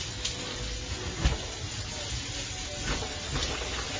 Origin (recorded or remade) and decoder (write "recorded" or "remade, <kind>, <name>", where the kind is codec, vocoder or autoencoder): recorded